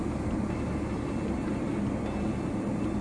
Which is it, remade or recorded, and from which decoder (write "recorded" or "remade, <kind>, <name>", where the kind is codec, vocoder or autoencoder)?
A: recorded